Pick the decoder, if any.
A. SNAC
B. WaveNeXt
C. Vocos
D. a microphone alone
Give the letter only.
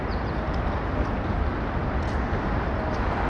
D